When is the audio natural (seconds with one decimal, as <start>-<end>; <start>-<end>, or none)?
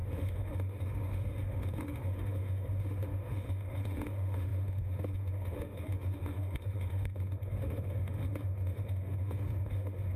none